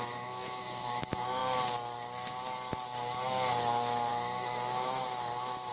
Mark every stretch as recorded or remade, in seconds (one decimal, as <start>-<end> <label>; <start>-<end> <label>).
0.0-1.4 remade; 1.4-4.1 recorded; 4.1-5.7 remade